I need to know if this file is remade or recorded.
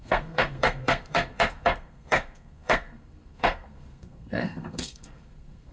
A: remade